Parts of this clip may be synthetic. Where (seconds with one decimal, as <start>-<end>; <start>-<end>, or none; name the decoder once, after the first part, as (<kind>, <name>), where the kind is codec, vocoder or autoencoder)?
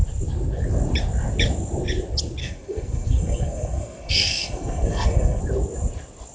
2.4-5.4 (codec, SNAC)